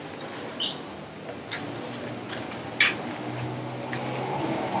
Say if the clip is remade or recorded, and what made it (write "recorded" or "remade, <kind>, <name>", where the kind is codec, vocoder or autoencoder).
recorded